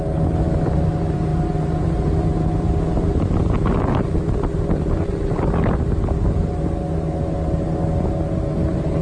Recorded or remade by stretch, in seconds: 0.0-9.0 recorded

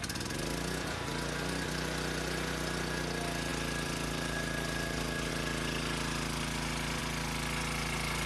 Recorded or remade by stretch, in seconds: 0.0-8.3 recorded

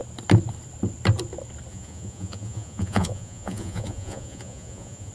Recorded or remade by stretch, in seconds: 0.0-1.7 recorded; 1.7-5.1 remade